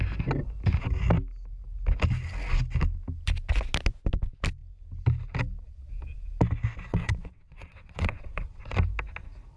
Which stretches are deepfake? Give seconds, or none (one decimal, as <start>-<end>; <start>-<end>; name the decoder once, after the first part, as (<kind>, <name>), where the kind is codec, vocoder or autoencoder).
6.9-8.6 (vocoder, WaveNeXt)